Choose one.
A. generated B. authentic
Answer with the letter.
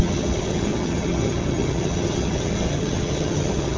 A